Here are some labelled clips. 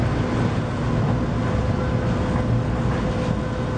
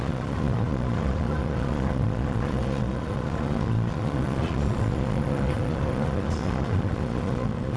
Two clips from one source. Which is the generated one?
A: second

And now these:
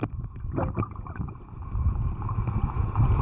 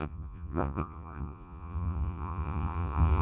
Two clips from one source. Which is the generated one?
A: second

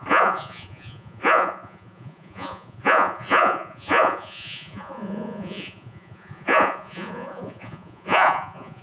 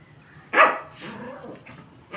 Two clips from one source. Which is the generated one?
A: first